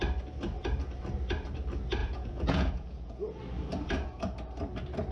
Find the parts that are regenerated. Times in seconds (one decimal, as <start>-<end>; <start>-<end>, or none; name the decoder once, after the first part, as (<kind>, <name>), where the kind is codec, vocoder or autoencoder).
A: 2.0-3.4 (vocoder, Vocos)